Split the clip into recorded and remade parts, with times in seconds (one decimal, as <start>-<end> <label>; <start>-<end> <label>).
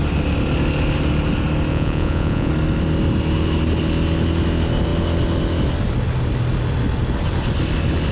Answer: 0.0-1.7 recorded; 1.7-2.5 remade; 2.5-8.1 recorded